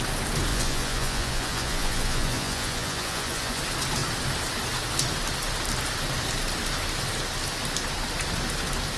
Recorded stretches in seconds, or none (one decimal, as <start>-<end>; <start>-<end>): 0.0-0.5; 3.6-9.0